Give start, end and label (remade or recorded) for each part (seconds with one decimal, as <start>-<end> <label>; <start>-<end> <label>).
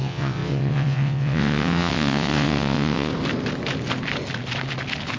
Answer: 0.0-3.1 remade; 3.1-5.2 recorded